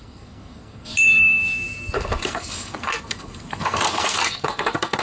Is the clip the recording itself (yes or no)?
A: no